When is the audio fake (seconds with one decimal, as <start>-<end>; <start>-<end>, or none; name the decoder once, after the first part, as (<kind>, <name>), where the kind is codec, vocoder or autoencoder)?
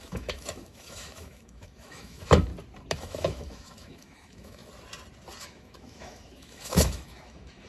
0.0-2.5 (autoencoder, DAC-VAE); 3.0-4.6; 5.4-7.7